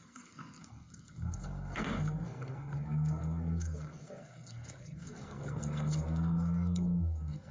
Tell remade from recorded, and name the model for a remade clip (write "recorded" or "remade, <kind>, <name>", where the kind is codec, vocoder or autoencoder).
remade, codec, SNAC